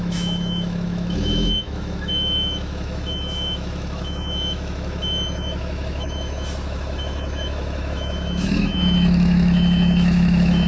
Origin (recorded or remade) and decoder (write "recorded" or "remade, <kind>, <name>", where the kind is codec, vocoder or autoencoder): remade, autoencoder, DAC-VAE